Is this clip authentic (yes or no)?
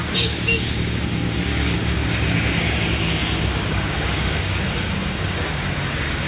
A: no